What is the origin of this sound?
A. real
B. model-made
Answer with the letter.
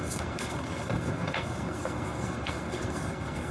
B